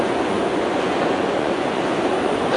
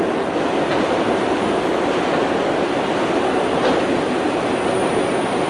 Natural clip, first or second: second